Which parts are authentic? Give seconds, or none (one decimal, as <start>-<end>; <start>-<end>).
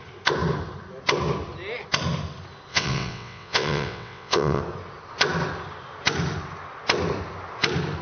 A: 0.0-2.7; 4.6-8.0